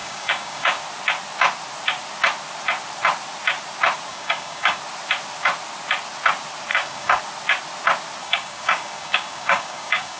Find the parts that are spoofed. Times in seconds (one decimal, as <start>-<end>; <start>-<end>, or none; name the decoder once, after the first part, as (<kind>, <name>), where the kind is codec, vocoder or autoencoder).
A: 0.0-0.8 (codec, DAC); 4.1-4.8; 6.7-7.2; 8.2-10.2